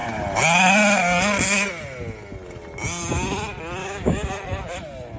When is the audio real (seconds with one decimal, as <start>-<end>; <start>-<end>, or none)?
0.0-3.8; 4.3-5.2